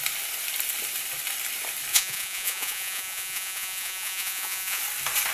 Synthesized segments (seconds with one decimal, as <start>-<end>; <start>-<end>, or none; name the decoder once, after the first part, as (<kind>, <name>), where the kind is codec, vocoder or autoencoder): 1.9-4.8 (vocoder, Vocos)